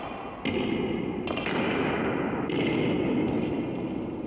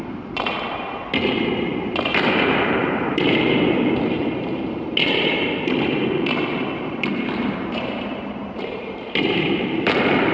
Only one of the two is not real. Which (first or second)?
second